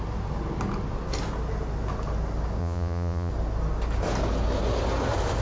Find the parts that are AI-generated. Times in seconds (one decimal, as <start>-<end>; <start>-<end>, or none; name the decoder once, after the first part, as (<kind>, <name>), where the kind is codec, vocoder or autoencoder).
2.6-3.3 (vocoder, Vocos)